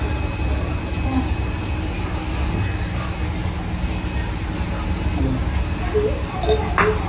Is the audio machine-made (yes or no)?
no